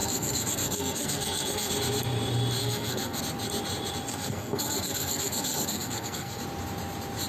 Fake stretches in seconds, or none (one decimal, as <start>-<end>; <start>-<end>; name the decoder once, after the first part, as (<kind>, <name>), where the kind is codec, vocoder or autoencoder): 0.0-1.7 (codec, SNAC); 2.6-3.2; 4.1-6.4